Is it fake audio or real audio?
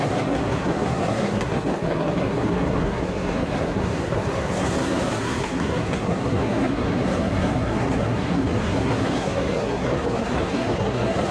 fake